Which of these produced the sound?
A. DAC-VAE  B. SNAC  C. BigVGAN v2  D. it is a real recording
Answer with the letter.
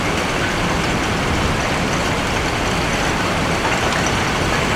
D